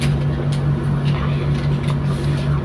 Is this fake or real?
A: real